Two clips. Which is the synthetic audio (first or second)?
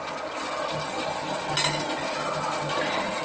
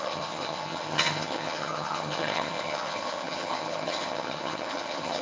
second